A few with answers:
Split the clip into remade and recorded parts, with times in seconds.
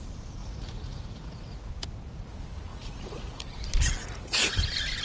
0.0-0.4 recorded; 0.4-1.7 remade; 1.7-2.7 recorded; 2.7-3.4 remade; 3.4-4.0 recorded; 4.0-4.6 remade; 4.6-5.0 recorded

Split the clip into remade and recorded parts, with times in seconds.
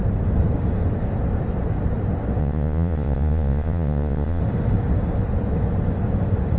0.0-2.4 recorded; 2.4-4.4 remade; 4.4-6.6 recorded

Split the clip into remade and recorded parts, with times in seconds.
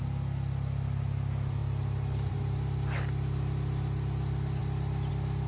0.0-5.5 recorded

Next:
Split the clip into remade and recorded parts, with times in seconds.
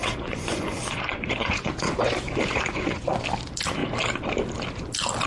0.0-3.2 remade; 3.2-5.3 recorded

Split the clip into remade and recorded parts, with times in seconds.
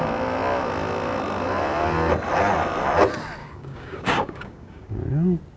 0.0-3.4 recorded; 3.4-5.0 remade; 5.0-5.6 recorded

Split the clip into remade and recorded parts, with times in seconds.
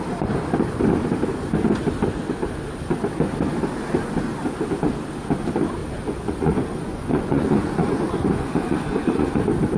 0.0-5.8 recorded; 5.8-9.4 remade; 9.4-9.8 recorded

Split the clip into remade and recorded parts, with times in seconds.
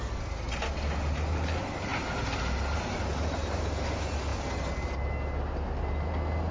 0.0-6.5 recorded